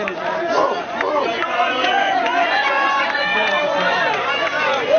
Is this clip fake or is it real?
fake